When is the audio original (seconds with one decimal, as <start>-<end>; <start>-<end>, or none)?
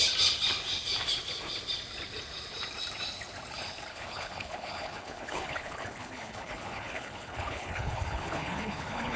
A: 0.0-3.9